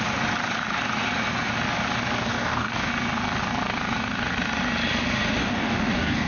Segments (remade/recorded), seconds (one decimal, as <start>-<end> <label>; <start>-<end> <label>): 0.0-2.3 recorded; 2.3-2.9 remade; 2.9-5.4 recorded; 5.4-6.3 remade